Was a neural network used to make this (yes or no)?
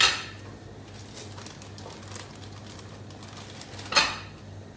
no